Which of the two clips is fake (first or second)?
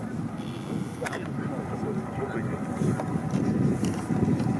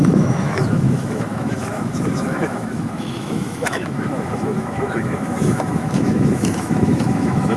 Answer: second